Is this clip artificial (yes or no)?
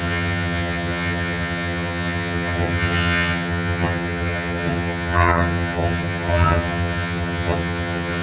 yes